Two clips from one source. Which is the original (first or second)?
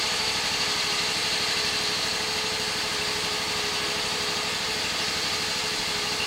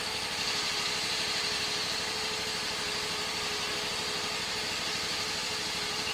second